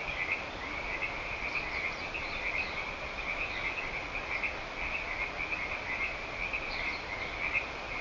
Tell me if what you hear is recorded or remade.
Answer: recorded